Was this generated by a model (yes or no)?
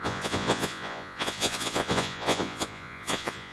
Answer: yes